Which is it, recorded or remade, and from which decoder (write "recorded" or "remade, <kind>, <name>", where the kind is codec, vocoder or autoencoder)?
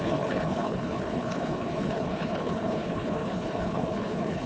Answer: remade, codec, HILCodec